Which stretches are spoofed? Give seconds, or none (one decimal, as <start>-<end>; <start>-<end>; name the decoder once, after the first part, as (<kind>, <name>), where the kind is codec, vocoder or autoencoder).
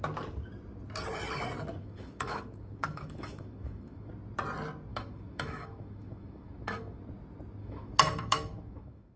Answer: 1.8-4.1 (autoencoder, DAC-VAE); 4.9-7.0; 7.6-9.2